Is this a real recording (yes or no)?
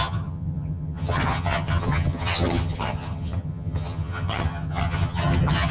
no